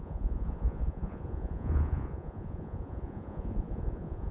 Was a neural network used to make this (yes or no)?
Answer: yes